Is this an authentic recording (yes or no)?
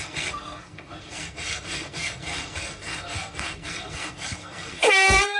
no